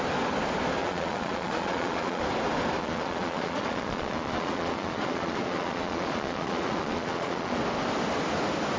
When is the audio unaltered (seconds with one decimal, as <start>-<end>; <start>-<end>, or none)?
0.0-0.8; 2.2-2.8; 7.6-8.8